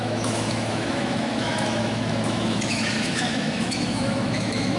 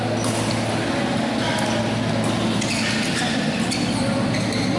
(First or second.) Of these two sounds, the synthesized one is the first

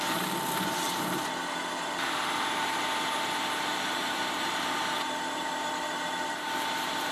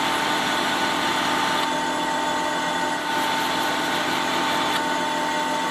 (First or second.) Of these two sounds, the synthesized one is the first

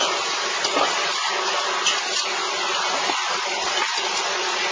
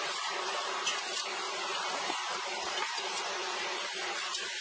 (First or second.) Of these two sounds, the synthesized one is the second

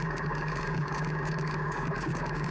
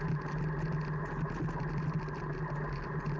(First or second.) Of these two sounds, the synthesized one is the first